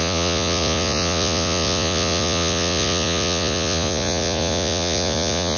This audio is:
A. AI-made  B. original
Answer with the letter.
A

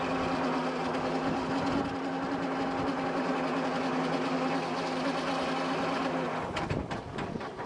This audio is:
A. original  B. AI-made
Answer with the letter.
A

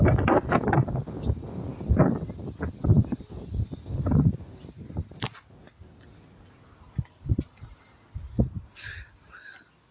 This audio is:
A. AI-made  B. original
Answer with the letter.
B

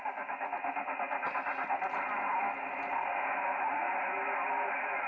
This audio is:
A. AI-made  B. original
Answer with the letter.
B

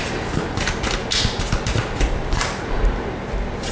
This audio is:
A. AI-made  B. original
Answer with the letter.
B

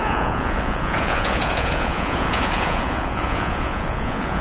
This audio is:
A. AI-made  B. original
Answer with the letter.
A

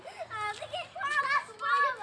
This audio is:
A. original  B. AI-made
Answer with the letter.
A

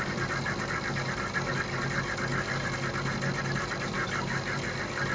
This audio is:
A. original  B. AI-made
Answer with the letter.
A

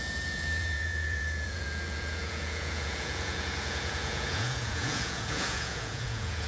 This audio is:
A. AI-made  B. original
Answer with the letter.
A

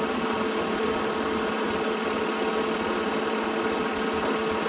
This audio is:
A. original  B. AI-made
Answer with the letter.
A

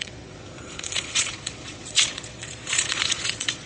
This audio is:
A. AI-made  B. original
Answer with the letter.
A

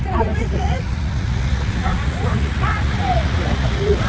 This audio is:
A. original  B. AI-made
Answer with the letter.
B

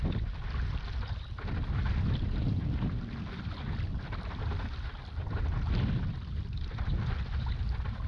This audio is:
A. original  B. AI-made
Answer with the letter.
A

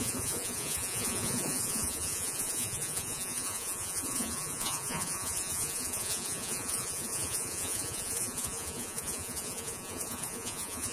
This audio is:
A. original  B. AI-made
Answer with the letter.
B